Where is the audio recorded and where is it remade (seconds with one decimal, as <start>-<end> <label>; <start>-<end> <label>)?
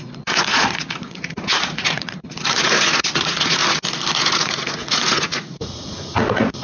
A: 0.0-3.6 remade; 3.6-4.2 recorded; 4.2-6.6 remade